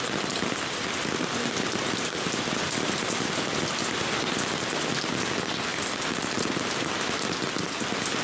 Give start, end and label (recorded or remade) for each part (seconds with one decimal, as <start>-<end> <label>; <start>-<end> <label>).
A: 0.0-8.2 recorded